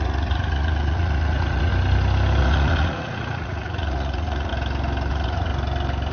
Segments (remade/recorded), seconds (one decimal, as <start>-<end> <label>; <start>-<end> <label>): 0.0-1.7 remade; 1.7-2.4 recorded; 2.4-4.5 remade; 4.5-5.1 recorded; 5.1-5.5 remade; 5.5-6.1 recorded